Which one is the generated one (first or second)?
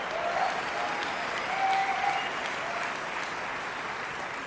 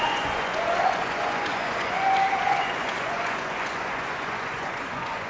second